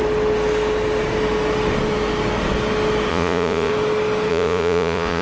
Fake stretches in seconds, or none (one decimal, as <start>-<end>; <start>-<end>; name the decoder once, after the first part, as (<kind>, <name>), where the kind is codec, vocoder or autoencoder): 3.1-3.7 (vocoder, Vocos); 4.3-5.2